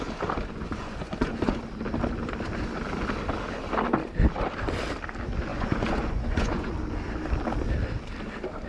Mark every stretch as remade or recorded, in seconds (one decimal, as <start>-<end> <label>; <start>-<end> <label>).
0.0-0.5 recorded; 0.5-1.6 remade; 1.6-5.5 recorded; 5.5-6.7 remade; 6.7-8.7 recorded